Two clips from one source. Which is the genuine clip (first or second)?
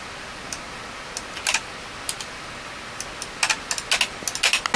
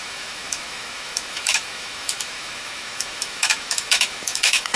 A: first